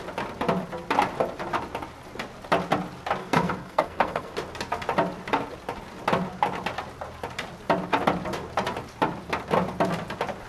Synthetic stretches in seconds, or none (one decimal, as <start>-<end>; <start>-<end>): 3.2-4.3